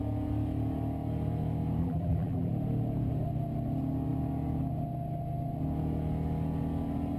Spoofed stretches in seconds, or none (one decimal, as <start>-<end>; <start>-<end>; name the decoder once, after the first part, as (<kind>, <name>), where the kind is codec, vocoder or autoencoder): 1.8-2.5 (vocoder, BigVGAN v2)